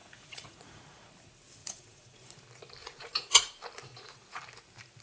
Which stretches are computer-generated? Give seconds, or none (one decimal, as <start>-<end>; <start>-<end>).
0.0-1.1; 1.6-2.3; 2.8-3.4; 3.9-4.4